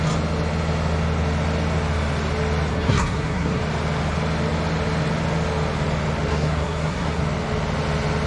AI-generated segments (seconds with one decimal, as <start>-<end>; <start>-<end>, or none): 2.7-3.6; 6.3-7.2